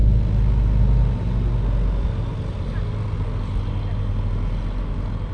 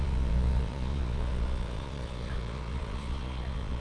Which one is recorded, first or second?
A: first